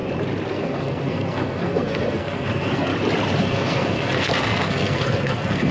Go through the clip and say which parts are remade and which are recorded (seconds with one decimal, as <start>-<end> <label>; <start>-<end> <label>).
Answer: 0.0-0.5 recorded; 0.5-2.9 remade; 2.9-3.4 recorded; 3.4-5.7 remade